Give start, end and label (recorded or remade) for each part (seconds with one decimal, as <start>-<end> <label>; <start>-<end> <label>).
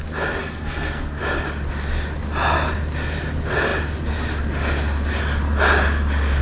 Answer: 0.0-0.4 recorded; 0.4-1.2 remade; 1.2-6.4 recorded